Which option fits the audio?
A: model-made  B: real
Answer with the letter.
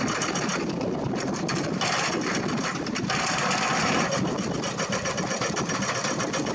A